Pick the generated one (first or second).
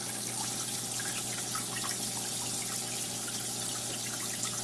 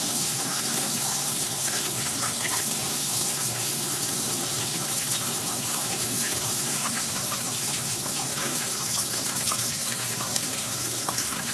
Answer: second